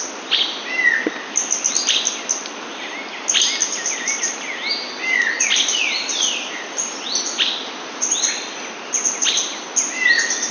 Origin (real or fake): real